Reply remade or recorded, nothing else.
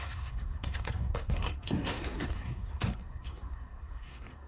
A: remade